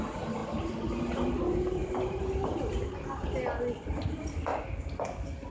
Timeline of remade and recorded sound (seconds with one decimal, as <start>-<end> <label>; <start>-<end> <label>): 0.0-0.4 recorded; 0.4-1.1 remade; 1.1-1.8 recorded; 1.8-2.5 remade; 2.5-5.5 recorded